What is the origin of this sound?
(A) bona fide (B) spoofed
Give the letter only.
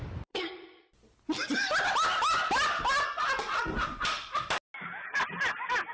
A